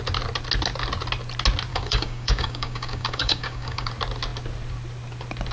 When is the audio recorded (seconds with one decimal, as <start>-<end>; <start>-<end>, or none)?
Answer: 0.0-1.7; 3.9-5.5